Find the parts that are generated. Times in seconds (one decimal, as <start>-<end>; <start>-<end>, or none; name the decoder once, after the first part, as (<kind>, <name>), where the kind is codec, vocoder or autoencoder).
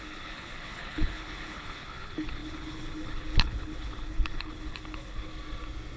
0.0-5.3 (codec, HILCodec)